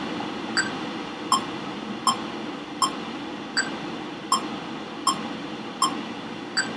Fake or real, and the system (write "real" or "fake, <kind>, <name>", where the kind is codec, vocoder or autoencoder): real